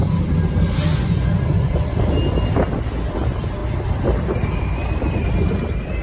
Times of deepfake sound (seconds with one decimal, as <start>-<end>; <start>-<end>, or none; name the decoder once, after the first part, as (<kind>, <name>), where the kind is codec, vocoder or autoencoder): 0.9-2.0 (vocoder, Vocos)